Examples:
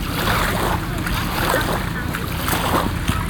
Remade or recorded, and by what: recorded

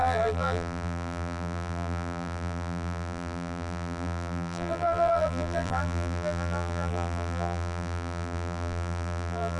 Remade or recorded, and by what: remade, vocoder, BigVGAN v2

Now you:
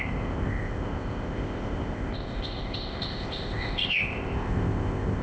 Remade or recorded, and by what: remade, codec, ZipCodec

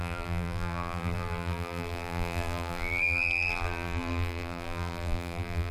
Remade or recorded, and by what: remade, vocoder, BigVGAN v2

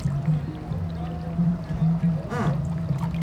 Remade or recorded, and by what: recorded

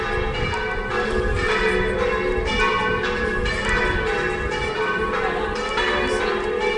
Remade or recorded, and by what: recorded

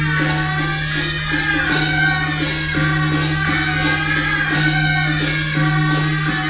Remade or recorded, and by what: recorded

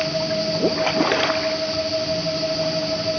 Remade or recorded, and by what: recorded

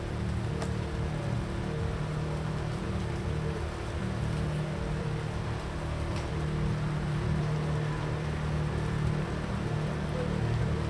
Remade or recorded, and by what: recorded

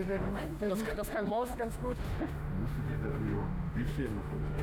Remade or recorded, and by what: remade, autoencoder, DAC-VAE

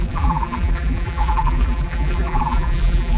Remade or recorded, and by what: remade, vocoder, BigVGAN v2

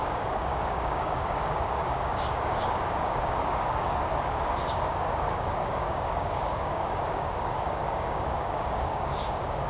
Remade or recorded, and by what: remade, codec, DAC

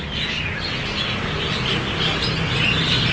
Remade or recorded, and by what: recorded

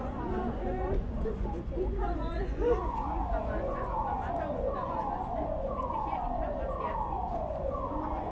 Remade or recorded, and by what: remade, vocoder, Vocos